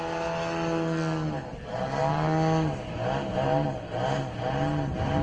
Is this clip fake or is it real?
real